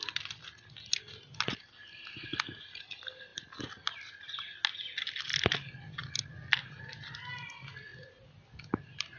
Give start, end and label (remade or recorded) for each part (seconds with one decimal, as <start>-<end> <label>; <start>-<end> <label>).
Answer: 0.0-9.2 recorded